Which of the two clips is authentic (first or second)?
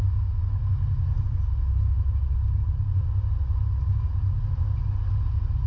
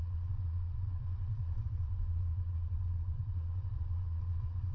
first